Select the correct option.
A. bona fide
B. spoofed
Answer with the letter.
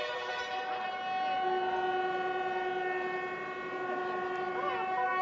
A